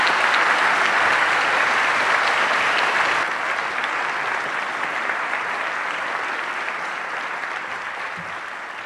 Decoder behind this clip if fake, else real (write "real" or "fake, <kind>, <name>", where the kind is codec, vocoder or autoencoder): real